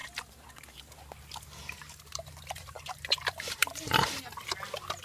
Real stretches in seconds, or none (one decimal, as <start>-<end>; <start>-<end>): 0.8-2.1; 4.1-5.0